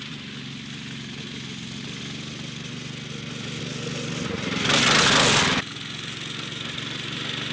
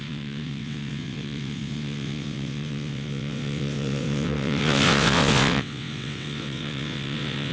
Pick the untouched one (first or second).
first